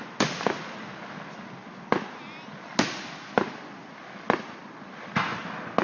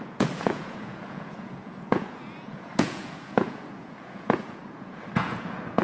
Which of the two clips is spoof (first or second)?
second